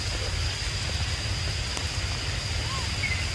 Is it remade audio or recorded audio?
recorded